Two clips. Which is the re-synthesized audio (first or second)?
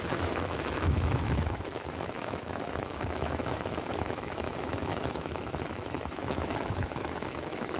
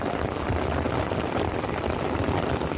first